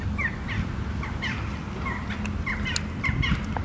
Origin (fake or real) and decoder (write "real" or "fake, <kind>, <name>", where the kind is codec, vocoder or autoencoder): real